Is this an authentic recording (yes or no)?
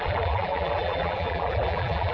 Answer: no